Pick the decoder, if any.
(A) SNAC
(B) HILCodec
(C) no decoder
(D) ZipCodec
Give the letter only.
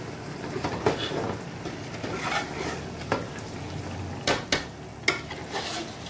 C